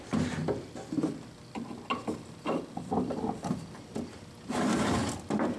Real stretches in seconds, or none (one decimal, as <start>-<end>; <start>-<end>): 0.0-5.6